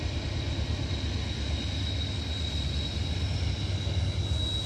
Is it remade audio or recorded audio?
recorded